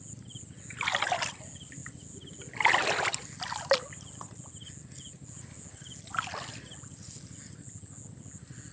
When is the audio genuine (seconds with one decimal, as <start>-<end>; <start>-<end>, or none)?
0.0-8.7